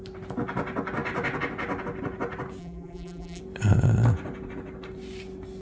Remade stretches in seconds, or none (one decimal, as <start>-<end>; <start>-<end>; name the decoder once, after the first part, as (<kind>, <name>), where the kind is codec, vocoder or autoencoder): 2.6-3.4 (vocoder, BigVGAN v2)